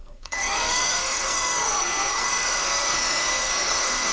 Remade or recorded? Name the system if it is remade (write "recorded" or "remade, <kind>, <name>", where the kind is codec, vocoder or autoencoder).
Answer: remade, codec, SNAC